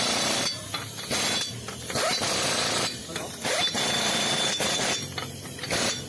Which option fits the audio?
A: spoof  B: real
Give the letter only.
A